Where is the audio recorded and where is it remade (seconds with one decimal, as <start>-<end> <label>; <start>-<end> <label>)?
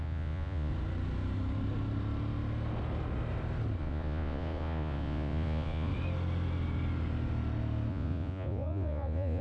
0.0-0.7 remade; 0.7-3.8 recorded; 3.8-5.9 remade; 5.9-7.9 recorded; 7.9-9.4 remade